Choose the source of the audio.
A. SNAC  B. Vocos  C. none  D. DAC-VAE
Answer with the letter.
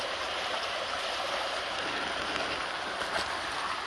C